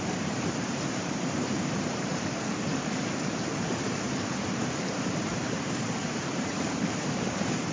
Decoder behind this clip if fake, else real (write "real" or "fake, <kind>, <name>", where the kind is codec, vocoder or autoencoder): fake, vocoder, BigVGAN v2